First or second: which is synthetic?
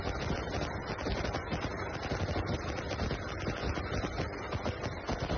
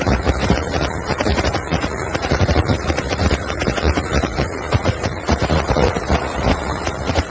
second